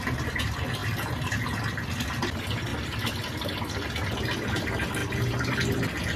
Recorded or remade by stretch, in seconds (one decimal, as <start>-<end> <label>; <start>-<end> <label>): 0.0-6.2 recorded